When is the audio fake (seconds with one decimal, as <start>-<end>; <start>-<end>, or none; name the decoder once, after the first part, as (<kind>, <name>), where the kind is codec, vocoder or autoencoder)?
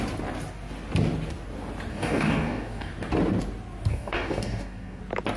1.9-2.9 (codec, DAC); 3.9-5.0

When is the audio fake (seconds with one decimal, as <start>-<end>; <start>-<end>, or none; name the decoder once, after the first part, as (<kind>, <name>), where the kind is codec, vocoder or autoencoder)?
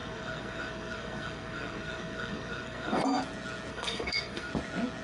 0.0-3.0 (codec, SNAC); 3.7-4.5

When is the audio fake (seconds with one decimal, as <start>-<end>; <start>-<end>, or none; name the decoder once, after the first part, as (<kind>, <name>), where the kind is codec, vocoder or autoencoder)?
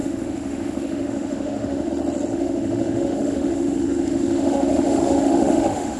0.0-1.9 (autoencoder, DAC-VAE); 2.3-6.0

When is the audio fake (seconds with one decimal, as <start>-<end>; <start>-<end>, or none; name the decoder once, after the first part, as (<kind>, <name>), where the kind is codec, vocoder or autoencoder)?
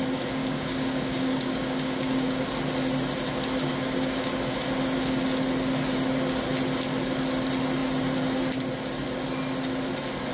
0.4-2.4 (codec, DAC); 3.7-4.3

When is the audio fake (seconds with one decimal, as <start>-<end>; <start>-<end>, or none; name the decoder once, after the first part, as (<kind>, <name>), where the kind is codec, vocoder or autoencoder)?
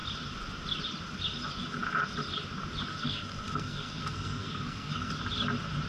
2.9-5.1 (codec, SNAC)